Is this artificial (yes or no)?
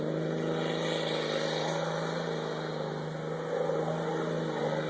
no